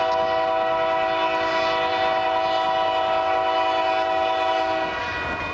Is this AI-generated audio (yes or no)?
no